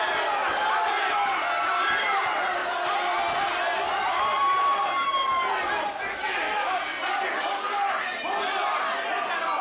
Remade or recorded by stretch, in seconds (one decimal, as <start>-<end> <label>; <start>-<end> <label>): 0.0-9.6 recorded